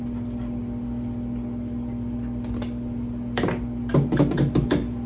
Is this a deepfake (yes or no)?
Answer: no